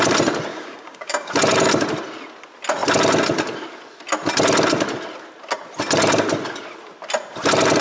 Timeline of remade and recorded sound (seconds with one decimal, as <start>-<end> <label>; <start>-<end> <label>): 0.0-0.5 recorded; 0.5-1.3 remade; 1.3-7.8 recorded